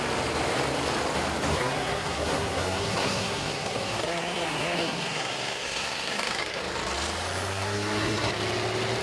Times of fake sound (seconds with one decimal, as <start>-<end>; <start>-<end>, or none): 1.5-6.6; 7.5-8.3